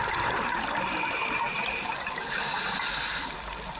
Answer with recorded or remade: recorded